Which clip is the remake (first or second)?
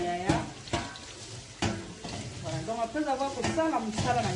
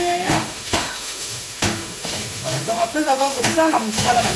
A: second